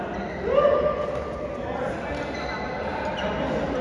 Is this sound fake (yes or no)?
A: no